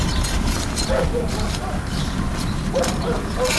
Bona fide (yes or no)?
yes